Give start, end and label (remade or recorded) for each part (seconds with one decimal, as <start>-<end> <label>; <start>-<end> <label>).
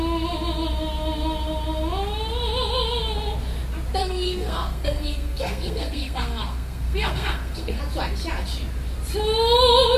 0.0-4.0 recorded; 4.0-7.8 remade; 7.8-10.0 recorded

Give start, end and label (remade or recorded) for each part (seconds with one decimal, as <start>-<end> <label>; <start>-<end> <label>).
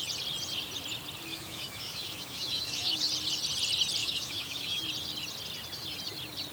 0.0-1.3 recorded; 1.3-3.0 remade; 3.0-4.0 recorded; 4.0-4.8 remade; 4.8-6.5 recorded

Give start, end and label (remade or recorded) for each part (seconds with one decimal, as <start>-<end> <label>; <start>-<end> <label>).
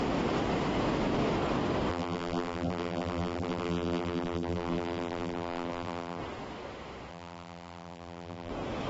0.0-1.9 recorded; 1.9-6.2 remade; 6.2-7.1 recorded; 7.1-8.5 remade; 8.5-8.9 recorded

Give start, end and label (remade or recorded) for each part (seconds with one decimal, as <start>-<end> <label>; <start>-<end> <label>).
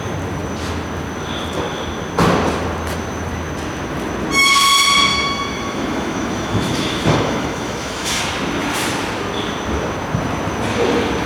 0.0-5.1 recorded; 5.1-8.2 remade; 8.2-11.3 recorded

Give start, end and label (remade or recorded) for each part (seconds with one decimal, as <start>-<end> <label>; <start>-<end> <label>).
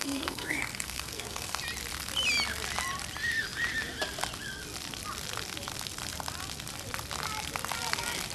0.0-1.6 remade; 1.6-8.3 recorded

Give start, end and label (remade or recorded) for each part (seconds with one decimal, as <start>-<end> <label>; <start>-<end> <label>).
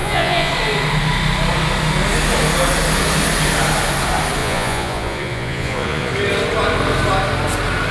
0.0-0.5 remade; 0.5-4.4 recorded; 4.4-6.1 remade; 6.1-7.9 recorded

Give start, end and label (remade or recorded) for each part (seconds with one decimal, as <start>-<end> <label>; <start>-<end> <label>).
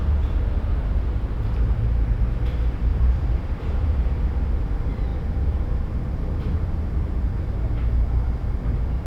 0.0-2.9 recorded; 2.9-4.0 remade; 4.0-5.1 recorded; 5.1-6.8 remade; 6.8-9.1 recorded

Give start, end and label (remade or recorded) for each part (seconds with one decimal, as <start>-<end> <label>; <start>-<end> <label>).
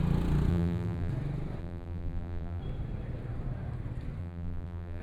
0.0-0.5 recorded; 0.5-1.1 remade; 1.1-1.6 recorded; 1.6-2.6 remade; 2.6-4.2 recorded; 4.2-5.0 remade